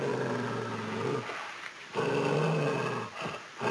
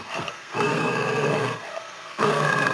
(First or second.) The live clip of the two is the first